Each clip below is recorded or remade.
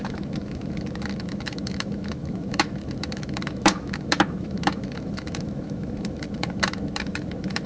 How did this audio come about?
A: remade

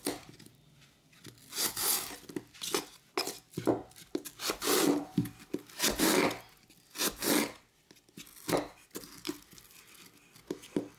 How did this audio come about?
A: recorded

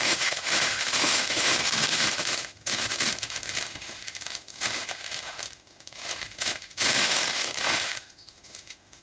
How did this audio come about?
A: remade